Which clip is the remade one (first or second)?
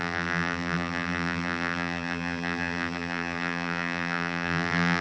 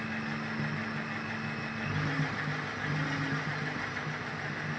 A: first